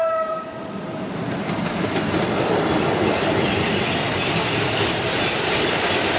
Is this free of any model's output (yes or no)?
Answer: yes